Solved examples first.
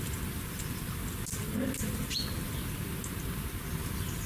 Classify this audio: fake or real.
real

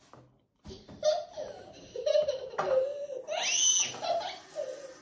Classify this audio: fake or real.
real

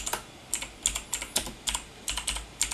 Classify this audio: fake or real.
real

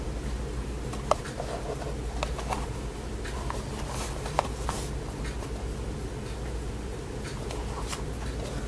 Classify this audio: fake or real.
real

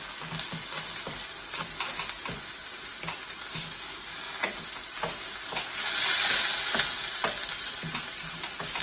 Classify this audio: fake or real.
real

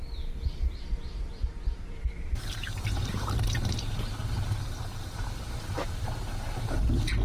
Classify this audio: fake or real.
fake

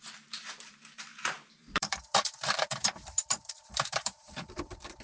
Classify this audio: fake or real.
fake